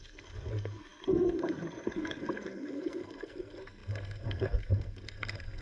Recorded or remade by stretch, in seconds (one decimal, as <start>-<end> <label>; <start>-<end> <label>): 0.0-5.6 remade